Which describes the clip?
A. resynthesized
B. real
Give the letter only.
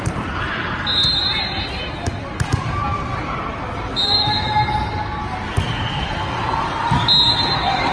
B